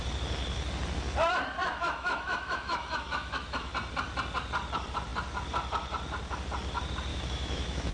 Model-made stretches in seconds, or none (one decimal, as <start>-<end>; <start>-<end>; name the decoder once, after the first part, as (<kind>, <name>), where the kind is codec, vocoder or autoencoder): 1.6-3.7 (autoencoder, DAC-VAE); 7.1-7.9